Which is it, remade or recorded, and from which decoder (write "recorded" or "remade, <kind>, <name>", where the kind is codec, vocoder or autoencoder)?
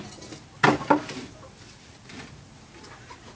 recorded